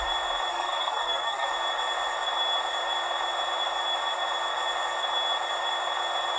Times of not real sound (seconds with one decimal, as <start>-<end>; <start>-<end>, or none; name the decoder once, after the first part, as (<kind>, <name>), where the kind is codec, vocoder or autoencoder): 0.5-1.5 (codec, SNAC)